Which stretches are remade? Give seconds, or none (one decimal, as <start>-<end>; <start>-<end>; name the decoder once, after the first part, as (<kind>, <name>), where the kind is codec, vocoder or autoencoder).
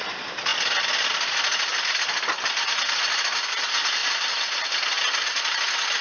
1.7-3.0 (vocoder, BigVGAN v2)